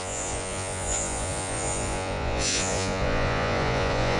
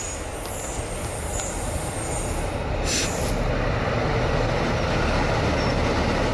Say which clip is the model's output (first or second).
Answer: first